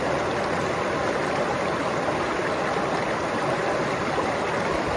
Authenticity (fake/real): real